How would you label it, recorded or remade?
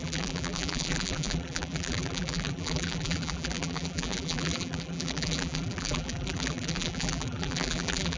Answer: remade